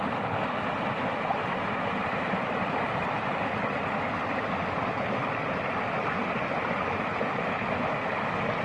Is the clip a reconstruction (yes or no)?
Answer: no